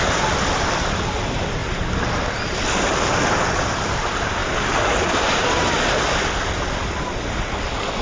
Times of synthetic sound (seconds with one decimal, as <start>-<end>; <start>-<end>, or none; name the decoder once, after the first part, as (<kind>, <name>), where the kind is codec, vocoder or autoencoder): none